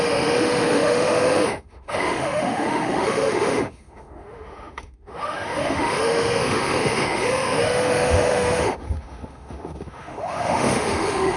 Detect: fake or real fake